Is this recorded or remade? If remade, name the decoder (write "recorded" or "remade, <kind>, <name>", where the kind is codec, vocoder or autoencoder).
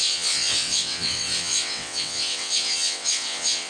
remade, vocoder, WaveNeXt